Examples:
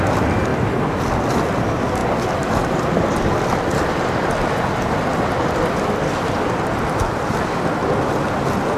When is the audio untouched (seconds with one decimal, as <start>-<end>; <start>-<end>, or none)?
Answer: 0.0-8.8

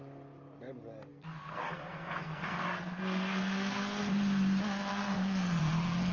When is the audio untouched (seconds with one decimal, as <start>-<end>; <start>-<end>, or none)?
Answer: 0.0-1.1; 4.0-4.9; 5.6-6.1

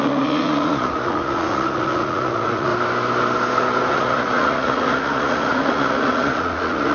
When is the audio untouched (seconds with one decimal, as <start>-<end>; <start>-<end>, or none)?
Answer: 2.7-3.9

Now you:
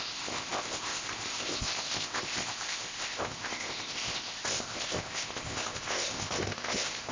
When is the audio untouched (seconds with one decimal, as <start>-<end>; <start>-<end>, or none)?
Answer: none